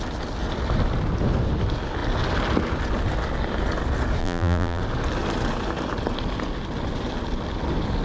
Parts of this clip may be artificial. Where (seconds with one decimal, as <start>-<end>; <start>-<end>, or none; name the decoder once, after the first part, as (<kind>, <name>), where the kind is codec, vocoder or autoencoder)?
4.2-4.8 (vocoder, BigVGAN v2)